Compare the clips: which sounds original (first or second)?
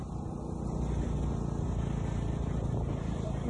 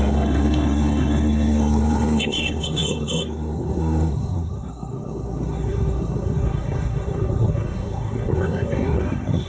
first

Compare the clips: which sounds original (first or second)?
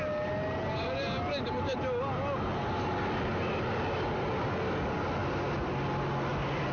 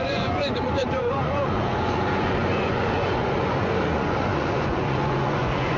first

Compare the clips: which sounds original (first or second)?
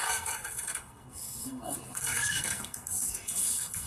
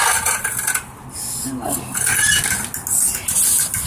second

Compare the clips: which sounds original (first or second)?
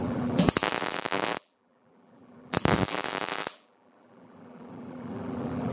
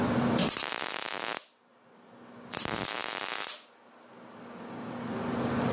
second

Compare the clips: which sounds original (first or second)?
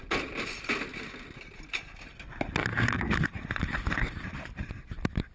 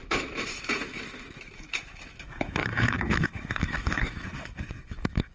first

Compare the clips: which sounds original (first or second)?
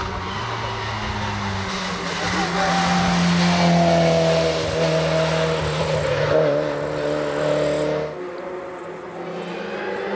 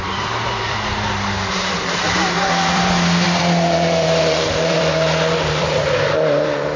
first